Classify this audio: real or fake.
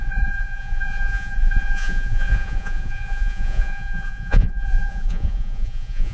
fake